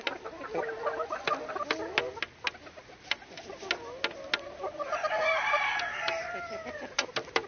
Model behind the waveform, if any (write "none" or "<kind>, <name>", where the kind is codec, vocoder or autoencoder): none